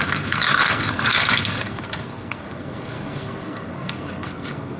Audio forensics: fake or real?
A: fake